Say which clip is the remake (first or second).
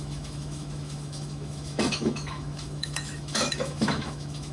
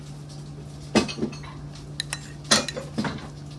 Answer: first